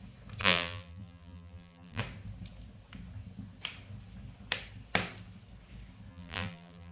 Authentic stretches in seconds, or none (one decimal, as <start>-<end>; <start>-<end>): 0.0-0.4; 2.0-6.1